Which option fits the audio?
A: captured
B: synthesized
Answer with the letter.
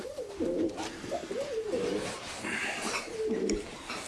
B